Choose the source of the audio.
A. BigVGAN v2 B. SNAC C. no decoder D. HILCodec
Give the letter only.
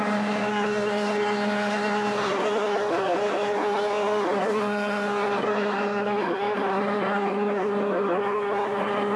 B